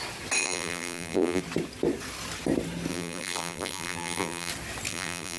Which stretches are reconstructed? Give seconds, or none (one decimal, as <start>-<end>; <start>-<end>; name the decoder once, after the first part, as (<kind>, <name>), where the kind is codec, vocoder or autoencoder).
0.4-1.4 (vocoder, BigVGAN v2); 2.9-4.5; 4.9-5.4